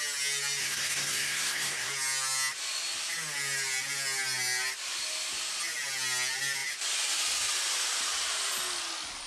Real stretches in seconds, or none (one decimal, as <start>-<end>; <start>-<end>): 0.0-0.6; 1.9-9.3